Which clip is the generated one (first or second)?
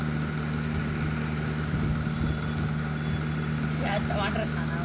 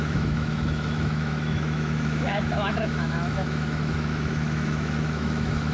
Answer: second